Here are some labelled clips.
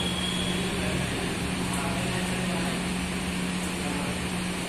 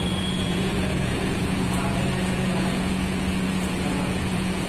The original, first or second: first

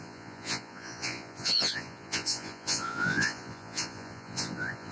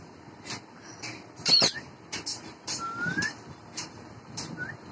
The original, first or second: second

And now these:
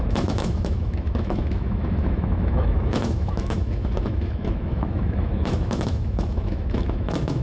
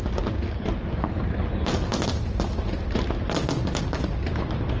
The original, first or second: second